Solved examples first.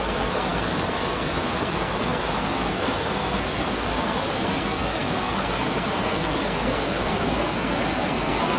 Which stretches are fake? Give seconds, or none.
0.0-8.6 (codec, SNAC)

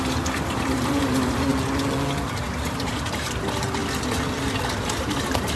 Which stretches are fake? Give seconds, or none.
0.0-1.5 (vocoder, BigVGAN v2); 2.9-3.8; 4.8-5.6

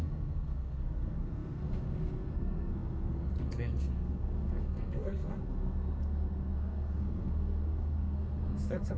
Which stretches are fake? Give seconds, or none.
0.0-9.0 (codec, SNAC)